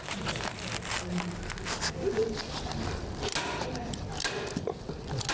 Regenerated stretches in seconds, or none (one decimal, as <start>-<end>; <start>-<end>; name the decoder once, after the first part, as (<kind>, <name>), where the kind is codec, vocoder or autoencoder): none